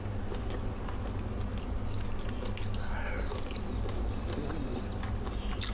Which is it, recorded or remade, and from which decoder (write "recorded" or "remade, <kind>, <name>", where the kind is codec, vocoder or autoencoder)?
recorded